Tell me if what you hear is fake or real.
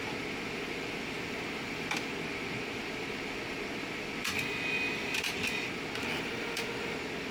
fake